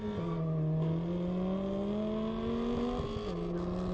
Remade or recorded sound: recorded